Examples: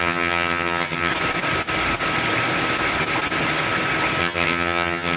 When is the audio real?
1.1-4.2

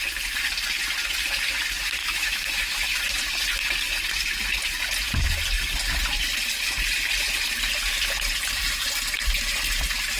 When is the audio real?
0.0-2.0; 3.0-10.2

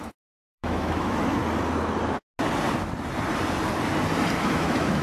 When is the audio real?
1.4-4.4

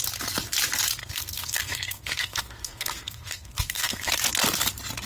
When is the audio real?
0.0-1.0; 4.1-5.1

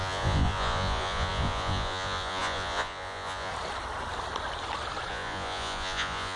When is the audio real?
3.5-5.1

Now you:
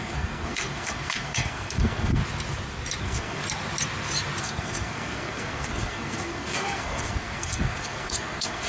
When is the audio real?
2.2-3.0; 3.4-4.4

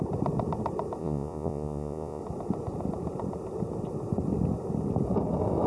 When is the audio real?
0.0-1.0; 2.2-5.7

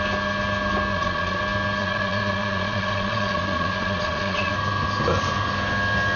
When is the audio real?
0.0-0.9; 1.4-1.8; 4.5-6.2